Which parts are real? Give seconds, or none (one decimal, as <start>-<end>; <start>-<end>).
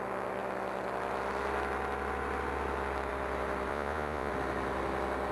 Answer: 0.0-3.7; 4.3-5.3